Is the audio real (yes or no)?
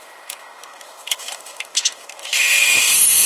no